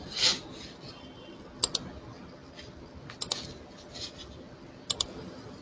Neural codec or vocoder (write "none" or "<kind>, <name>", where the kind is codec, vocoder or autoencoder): none